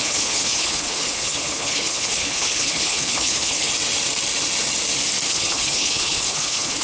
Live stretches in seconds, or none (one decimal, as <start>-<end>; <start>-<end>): 3.7-5.3